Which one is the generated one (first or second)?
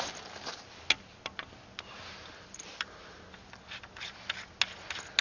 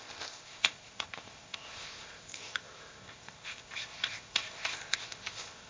second